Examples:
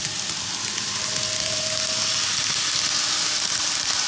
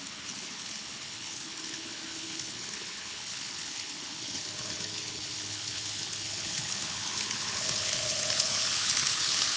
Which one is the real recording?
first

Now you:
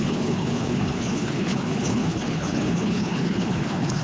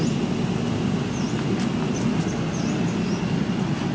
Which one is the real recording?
second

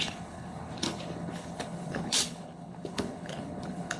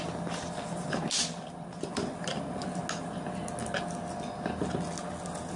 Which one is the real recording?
second